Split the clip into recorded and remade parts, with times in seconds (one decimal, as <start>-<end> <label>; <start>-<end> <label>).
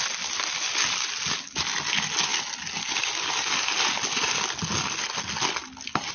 0.0-6.1 recorded